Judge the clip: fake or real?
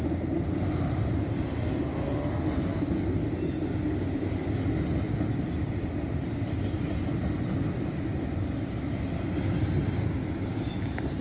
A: real